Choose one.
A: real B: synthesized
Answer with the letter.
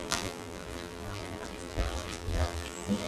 B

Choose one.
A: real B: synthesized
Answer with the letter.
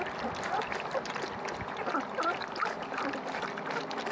A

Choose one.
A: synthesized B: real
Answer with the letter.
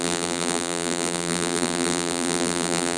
A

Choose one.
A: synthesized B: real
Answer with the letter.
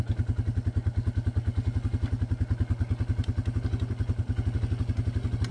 B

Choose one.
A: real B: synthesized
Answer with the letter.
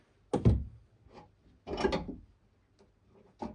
A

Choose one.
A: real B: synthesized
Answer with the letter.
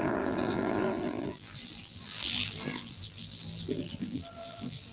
B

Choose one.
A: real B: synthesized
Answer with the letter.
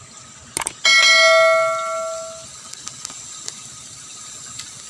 A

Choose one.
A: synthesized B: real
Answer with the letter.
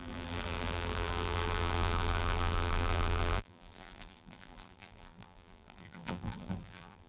A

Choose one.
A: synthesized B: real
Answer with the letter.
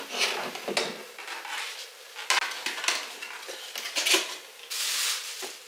B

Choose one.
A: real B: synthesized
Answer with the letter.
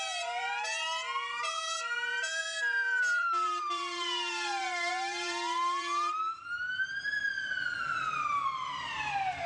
B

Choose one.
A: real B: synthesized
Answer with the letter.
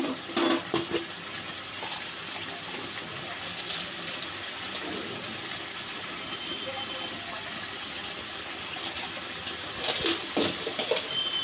A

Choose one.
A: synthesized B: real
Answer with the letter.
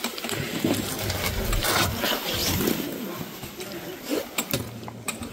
B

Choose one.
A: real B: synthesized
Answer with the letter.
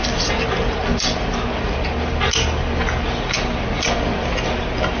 A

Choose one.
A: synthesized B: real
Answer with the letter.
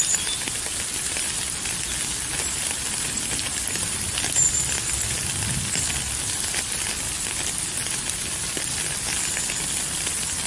B